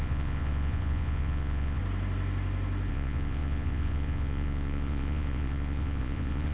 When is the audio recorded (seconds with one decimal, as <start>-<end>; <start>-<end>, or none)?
1.8-2.9